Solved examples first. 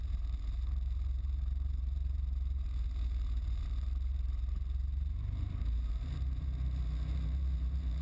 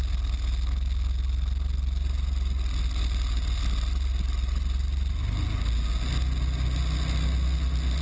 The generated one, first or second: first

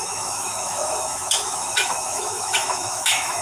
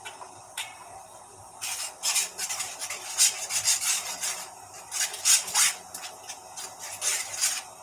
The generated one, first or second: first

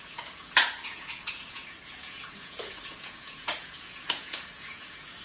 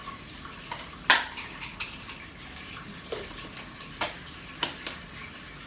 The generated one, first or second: first